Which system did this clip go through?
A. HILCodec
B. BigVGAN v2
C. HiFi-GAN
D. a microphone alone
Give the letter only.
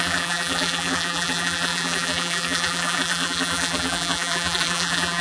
B